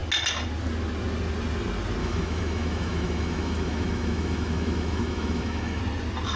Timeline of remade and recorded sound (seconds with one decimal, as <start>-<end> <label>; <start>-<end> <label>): 0.0-2.0 recorded; 2.0-5.8 remade; 5.8-6.4 recorded